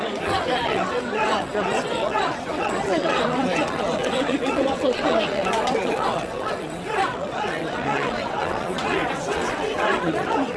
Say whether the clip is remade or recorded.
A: remade